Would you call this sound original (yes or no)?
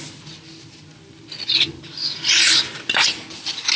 yes